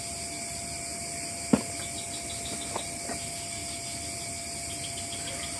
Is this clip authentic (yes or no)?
yes